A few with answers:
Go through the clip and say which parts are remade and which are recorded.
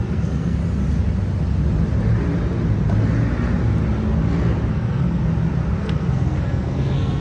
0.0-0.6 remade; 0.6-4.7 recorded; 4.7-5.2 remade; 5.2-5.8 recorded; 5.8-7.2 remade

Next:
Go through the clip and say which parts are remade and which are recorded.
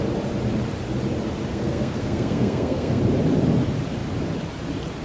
0.0-1.5 recorded; 1.5-3.0 remade; 3.0-5.0 recorded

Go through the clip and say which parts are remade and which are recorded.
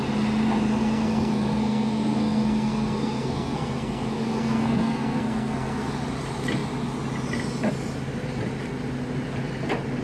0.0-0.8 recorded; 0.8-5.9 remade; 5.9-10.0 recorded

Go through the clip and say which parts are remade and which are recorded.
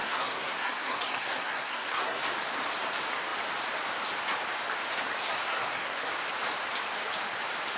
0.0-2.2 remade; 2.2-5.2 recorded; 5.2-6.1 remade; 6.1-7.8 recorded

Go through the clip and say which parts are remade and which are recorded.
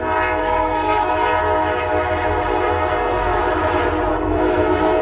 0.0-0.4 recorded; 0.4-1.1 remade; 1.1-2.6 recorded; 2.6-3.4 remade; 3.4-4.1 recorded; 4.1-5.0 remade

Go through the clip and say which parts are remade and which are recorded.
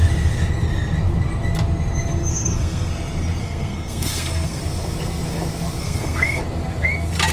0.0-2.3 recorded; 2.3-2.9 remade; 2.9-3.4 recorded; 3.4-4.6 remade; 4.6-5.8 recorded; 5.8-6.4 remade; 6.4-7.3 recorded